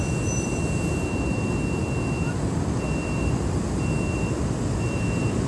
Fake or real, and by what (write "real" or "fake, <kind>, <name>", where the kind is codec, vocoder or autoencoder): real